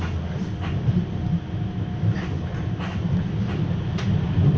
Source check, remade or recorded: recorded